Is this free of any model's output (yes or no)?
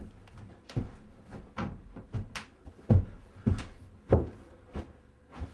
yes